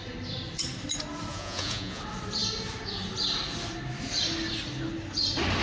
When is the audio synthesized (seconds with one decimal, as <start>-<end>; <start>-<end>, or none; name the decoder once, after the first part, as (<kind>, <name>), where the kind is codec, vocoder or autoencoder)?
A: 1.3-2.0 (vocoder, Vocos)